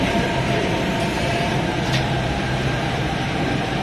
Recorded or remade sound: remade